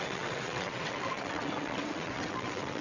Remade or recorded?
remade